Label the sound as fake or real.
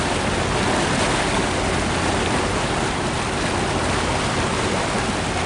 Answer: real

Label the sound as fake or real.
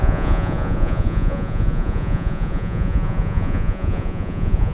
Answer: fake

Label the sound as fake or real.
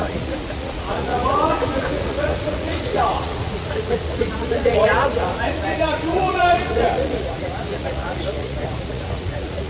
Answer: fake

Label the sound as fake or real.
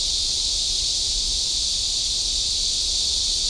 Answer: real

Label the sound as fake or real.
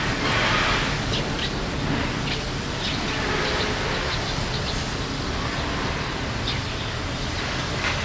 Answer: real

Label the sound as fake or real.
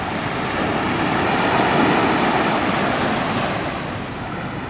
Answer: real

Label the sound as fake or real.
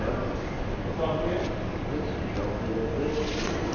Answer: real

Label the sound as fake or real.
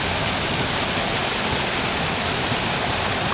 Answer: real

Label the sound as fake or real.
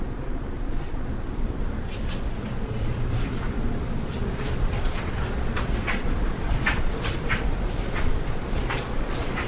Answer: fake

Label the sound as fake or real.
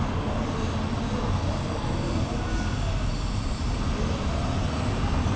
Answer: real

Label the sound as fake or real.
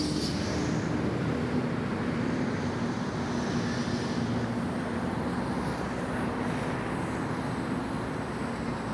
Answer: real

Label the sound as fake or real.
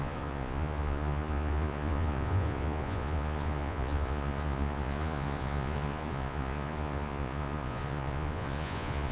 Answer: fake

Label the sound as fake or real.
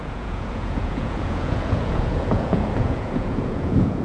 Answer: fake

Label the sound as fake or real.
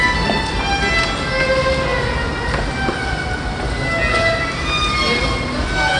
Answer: real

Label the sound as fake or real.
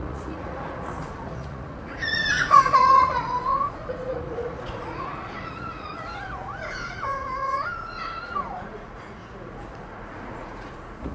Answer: fake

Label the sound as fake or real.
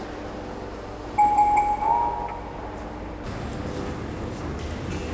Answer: real